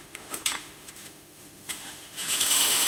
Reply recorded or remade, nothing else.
remade